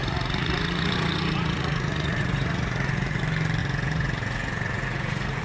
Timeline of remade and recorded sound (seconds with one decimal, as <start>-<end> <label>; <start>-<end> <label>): 0.0-3.2 remade; 3.2-3.6 recorded; 3.6-5.4 remade

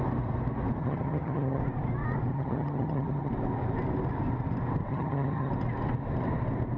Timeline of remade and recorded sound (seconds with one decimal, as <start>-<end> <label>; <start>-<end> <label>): 0.0-0.8 recorded; 0.8-1.6 remade; 1.6-2.3 recorded; 2.3-3.3 remade; 3.3-4.9 recorded; 4.9-5.5 remade; 5.5-6.8 recorded